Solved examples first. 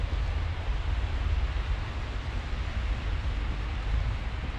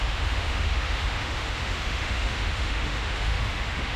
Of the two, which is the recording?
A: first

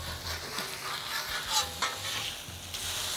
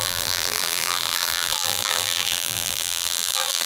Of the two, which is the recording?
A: first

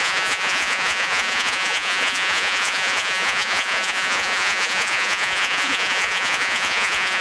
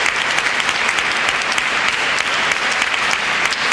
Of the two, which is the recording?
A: second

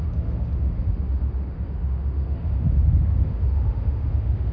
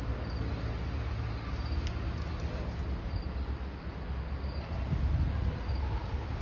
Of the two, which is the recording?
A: second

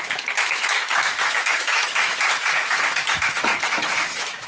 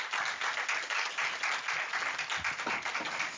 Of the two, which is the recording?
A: second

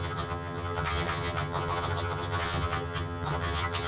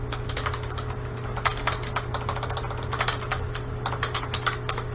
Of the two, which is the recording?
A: second